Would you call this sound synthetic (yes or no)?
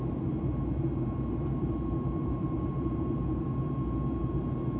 yes